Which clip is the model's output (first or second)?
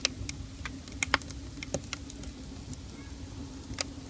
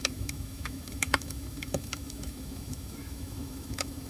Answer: second